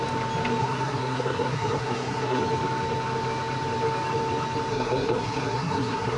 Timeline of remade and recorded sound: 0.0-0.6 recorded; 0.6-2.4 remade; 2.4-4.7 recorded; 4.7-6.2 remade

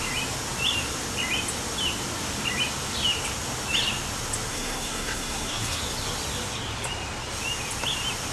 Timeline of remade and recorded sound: 0.0-4.5 recorded; 4.5-5.8 remade; 5.8-8.3 recorded

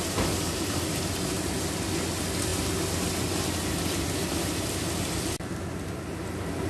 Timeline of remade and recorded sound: 0.0-6.7 recorded